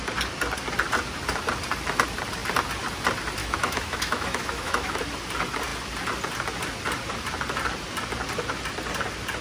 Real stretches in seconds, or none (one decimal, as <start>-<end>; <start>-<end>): 0.0-3.4; 5.0-9.4